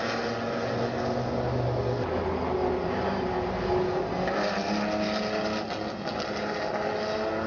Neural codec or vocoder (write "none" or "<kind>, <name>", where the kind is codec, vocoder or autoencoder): none